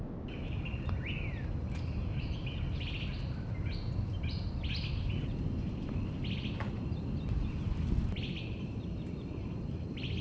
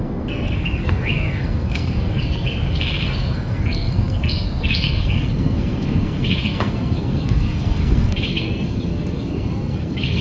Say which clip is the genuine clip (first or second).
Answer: first